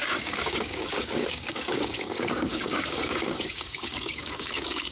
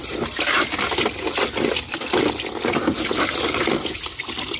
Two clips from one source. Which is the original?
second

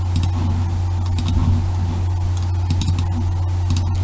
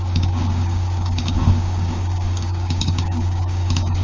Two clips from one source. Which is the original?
first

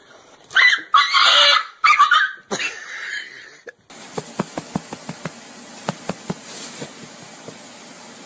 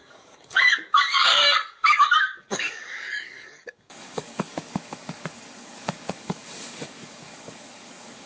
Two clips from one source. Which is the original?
first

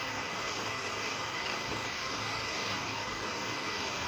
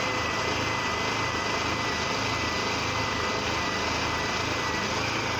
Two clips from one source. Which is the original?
second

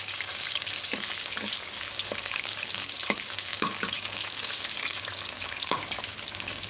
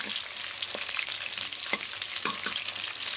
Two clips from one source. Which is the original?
second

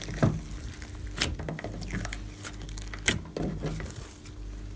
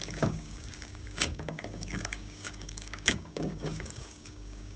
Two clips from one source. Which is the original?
first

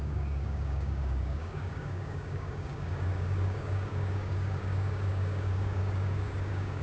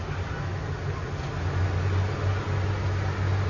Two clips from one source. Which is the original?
second